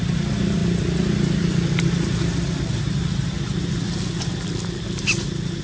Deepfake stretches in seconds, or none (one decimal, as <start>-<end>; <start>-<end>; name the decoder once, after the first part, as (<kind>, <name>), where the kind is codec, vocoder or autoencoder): none